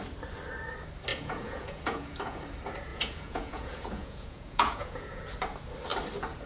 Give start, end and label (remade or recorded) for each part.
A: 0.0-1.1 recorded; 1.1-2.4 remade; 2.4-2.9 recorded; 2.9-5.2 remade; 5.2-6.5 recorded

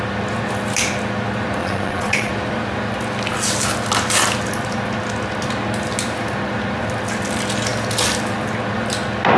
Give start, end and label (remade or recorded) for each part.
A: 0.0-1.6 recorded; 1.6-2.3 remade; 2.3-9.4 recorded

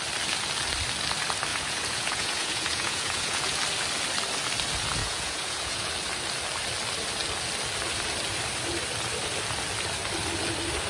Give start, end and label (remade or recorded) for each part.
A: 0.0-1.5 recorded; 1.5-3.6 remade; 3.6-5.0 recorded; 5.0-5.9 remade; 5.9-10.9 recorded

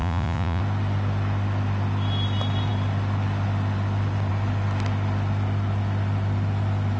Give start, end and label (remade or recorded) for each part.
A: 0.0-0.6 remade; 0.6-7.0 recorded

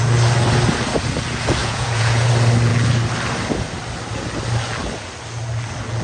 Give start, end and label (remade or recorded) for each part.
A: 0.0-1.6 recorded; 1.6-2.3 remade; 2.3-6.0 recorded